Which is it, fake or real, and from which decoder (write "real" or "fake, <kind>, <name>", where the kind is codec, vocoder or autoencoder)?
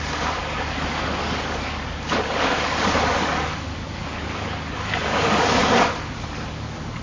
fake, codec, DAC